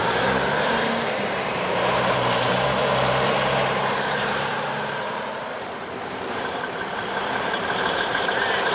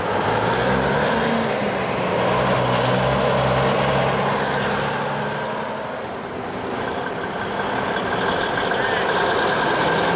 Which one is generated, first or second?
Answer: first